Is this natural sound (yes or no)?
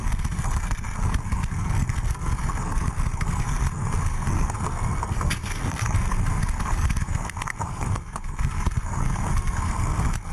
no